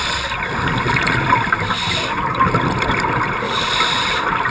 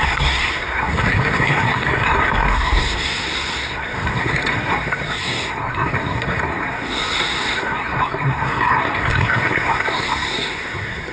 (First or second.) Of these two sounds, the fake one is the second